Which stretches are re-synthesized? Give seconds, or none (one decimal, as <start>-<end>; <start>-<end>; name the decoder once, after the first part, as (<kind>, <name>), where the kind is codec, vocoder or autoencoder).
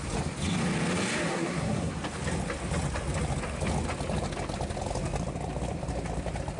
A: 1.3-1.9 (codec, SNAC)